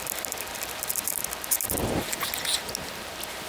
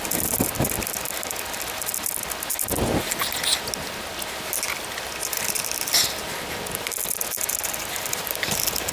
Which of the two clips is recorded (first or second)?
second